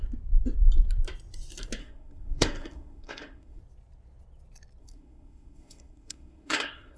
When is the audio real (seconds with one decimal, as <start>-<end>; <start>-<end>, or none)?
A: 0.0-1.8; 3.6-4.8